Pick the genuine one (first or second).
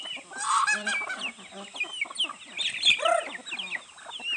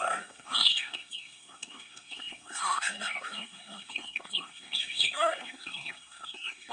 first